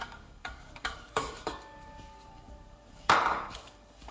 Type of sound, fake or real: fake